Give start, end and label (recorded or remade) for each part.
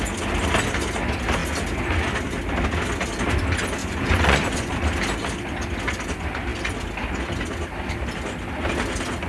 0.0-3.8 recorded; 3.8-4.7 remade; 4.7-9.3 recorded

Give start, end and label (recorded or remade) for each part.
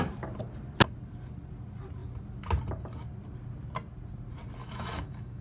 0.0-4.6 recorded; 4.6-5.4 remade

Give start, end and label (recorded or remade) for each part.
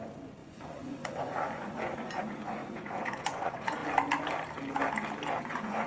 0.0-3.8 remade; 3.8-5.4 recorded; 5.4-5.9 remade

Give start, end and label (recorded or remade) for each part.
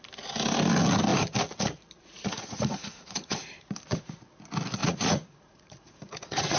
0.0-2.0 recorded; 2.0-3.7 remade; 3.7-4.8 recorded; 4.8-6.6 remade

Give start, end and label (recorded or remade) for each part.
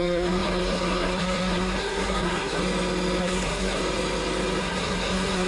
0.0-2.6 remade; 2.6-3.2 recorded; 3.2-3.8 remade; 3.8-4.6 recorded; 4.6-5.5 remade